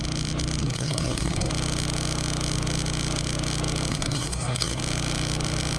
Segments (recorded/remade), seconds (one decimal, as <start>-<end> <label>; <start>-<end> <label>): 0.0-0.6 recorded; 0.6-1.5 remade; 1.5-3.9 recorded; 3.9-4.8 remade; 4.8-5.8 recorded